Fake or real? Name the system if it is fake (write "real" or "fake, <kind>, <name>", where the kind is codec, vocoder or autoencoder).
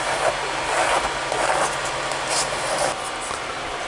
real